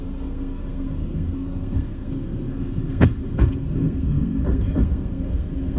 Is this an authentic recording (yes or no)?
no